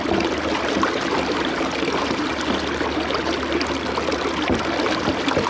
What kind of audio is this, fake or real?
real